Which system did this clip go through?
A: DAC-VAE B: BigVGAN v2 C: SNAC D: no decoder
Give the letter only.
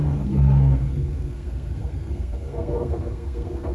C